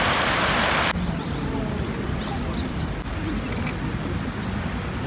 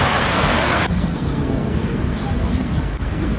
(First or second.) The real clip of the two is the first